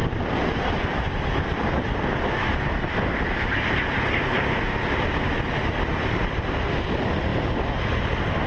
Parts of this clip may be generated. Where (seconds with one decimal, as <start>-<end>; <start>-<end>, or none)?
none